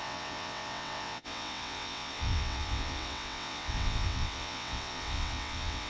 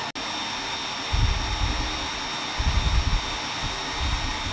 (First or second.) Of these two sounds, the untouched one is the second